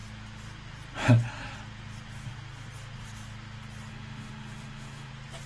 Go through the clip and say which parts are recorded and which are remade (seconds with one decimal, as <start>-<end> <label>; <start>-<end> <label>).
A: 0.0-3.9 recorded; 3.9-5.1 remade; 5.1-5.5 recorded